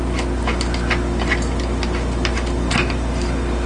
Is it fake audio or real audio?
real